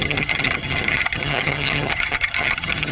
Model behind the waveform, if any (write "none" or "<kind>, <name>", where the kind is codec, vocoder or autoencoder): vocoder, HiFi-GAN